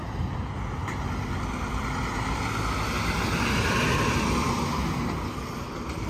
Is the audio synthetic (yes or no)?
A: no